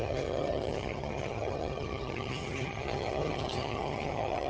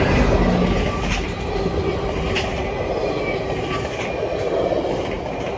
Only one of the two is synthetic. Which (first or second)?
first